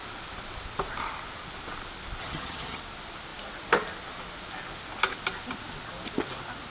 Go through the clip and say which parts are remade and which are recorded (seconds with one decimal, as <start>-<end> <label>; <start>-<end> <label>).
0.0-2.2 recorded; 2.2-2.8 remade; 2.8-6.7 recorded